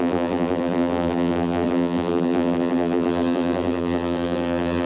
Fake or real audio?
fake